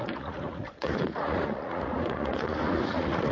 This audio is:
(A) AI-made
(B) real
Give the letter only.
A